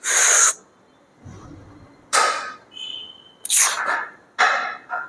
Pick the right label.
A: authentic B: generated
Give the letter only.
A